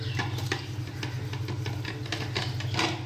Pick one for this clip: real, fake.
real